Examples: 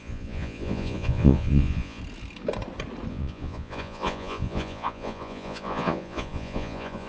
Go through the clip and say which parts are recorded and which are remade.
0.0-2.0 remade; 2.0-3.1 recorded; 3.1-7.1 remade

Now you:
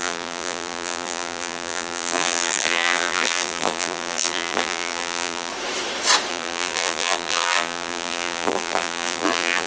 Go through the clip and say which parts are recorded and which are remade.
0.0-5.5 remade; 5.5-6.3 recorded; 6.3-9.7 remade

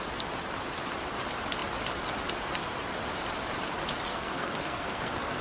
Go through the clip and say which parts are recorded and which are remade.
0.0-4.1 recorded; 4.1-5.4 remade